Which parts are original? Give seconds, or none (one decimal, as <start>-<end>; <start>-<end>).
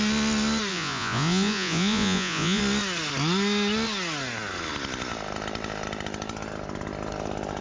0.0-0.7; 2.6-7.6